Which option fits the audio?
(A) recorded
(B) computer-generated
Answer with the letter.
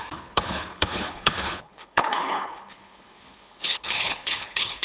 B